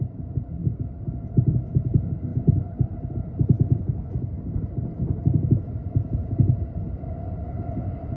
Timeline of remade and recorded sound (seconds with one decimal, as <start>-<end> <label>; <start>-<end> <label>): 0.0-8.2 recorded